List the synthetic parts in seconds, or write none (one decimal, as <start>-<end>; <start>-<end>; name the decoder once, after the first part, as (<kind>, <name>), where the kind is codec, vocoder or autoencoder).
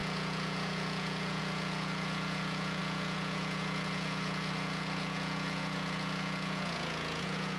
0.0-7.6 (vocoder, Vocos)